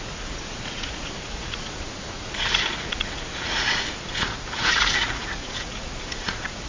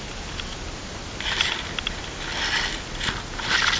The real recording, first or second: second